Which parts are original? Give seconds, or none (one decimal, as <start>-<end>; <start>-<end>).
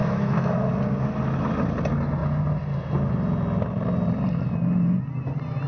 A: 0.7-5.7